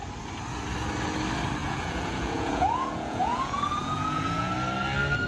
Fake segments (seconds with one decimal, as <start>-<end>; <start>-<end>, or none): 1.6-4.5